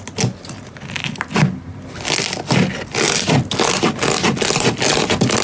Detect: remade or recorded recorded